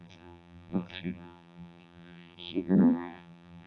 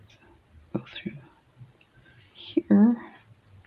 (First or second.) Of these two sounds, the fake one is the first